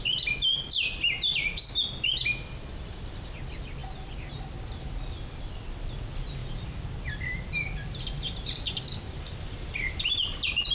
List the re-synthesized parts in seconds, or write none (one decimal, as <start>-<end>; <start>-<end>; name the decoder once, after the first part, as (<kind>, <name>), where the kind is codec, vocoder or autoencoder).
none